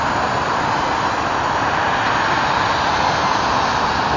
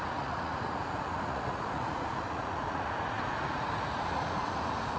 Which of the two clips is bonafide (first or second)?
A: first